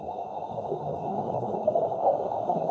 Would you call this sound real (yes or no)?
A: no